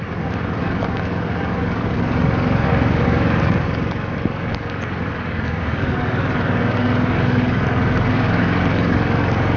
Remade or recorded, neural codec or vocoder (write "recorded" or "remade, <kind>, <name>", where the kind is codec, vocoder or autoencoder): remade, codec, DAC